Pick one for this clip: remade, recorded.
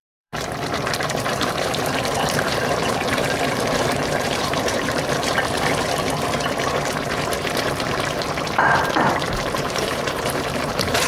remade